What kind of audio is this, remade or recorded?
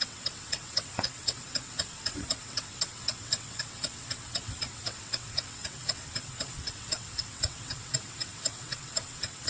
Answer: remade